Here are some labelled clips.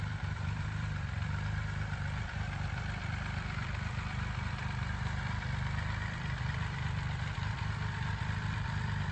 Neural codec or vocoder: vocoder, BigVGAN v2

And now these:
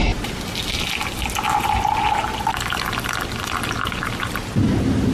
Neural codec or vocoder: none